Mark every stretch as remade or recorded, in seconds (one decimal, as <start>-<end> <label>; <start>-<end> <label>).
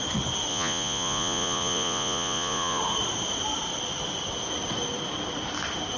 0.0-0.5 recorded; 0.5-2.8 remade; 2.8-6.0 recorded